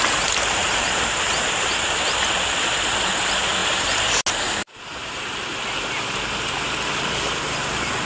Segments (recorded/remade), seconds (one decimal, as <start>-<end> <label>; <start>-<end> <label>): 0.0-0.6 recorded; 0.6-1.3 remade; 1.3-3.6 recorded; 3.6-4.1 remade; 4.1-4.9 recorded; 4.9-5.4 remade; 5.4-8.1 recorded